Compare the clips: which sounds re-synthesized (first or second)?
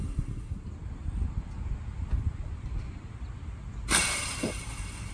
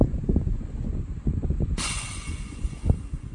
second